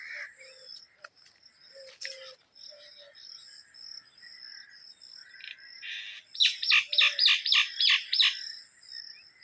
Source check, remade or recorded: recorded